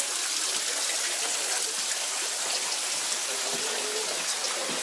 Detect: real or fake real